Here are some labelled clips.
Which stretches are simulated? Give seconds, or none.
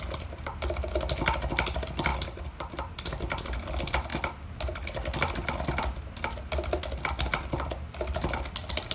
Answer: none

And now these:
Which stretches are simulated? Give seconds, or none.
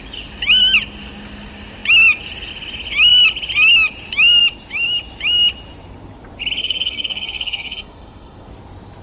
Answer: 6.6-8.5 (codec, SNAC)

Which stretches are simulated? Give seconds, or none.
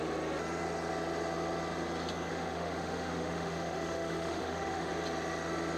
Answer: 2.3-4.9 (autoencoder, DAC-VAE)